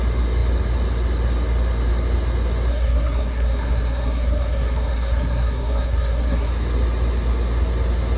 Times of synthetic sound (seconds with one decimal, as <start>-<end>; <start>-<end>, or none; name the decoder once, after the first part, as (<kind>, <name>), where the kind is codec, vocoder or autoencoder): 2.7-6.5 (codec, SNAC)